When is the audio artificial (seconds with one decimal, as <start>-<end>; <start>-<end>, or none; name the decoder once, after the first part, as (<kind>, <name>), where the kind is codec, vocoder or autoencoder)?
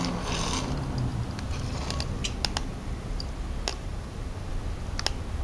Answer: 3.7-4.5 (vocoder, BigVGAN v2)